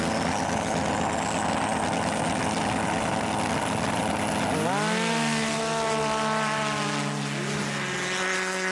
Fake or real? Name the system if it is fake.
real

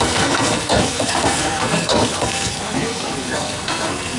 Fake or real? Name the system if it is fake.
fake, codec, SNAC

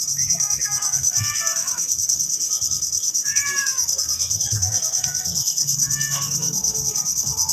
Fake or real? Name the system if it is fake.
fake, codec, SNAC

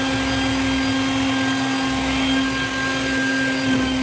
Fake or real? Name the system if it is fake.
real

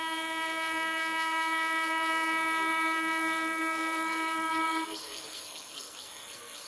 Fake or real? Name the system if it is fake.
fake, codec, SNAC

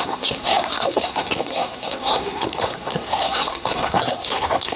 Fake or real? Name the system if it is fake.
fake, codec, SNAC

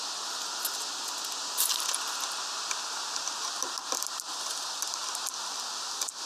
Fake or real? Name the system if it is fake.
real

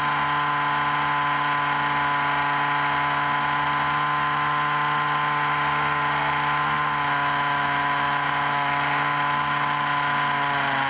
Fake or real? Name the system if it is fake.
real